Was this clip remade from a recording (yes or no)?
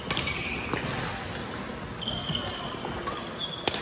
no